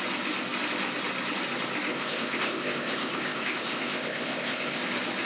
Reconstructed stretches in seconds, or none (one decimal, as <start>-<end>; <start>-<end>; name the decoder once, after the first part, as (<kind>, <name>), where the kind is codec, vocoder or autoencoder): 1.9-4.8 (codec, ZipCodec)